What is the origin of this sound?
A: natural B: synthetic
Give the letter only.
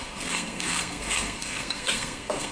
B